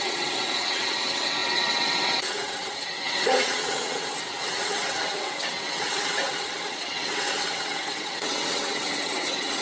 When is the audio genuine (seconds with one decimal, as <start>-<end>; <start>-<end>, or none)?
none